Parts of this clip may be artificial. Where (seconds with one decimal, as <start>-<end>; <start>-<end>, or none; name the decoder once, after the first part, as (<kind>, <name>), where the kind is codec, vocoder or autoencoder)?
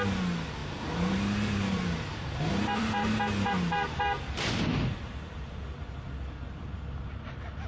0.6-5.2 (vocoder, BigVGAN v2)